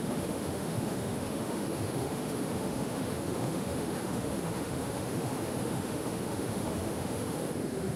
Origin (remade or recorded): remade